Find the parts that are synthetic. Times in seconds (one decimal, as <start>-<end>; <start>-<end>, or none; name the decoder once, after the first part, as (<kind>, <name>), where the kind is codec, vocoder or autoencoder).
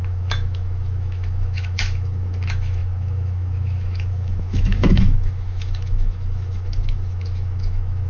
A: 0.0-8.1 (autoencoder, DAC-VAE)